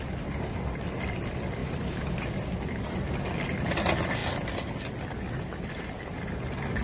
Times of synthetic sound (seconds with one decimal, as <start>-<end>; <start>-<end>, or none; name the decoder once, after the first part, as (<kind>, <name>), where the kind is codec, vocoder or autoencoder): 1.6-2.1 (vocoder, BigVGAN v2)